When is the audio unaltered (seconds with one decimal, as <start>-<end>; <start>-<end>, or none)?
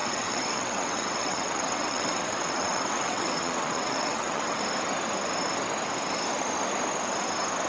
4.6-7.7